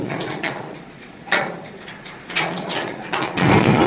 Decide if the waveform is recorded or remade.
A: remade